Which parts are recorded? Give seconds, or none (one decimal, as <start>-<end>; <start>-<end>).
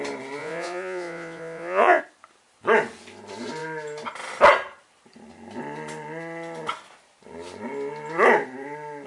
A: 0.0-0.4; 2.0-9.1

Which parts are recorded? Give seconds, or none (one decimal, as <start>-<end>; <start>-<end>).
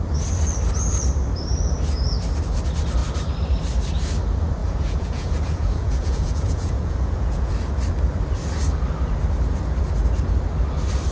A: 0.0-4.6; 7.5-11.1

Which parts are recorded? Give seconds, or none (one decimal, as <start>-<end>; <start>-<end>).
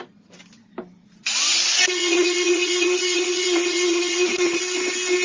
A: 0.0-1.5; 4.6-5.2